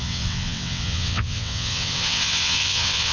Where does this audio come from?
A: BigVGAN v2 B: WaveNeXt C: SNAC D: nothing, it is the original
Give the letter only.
B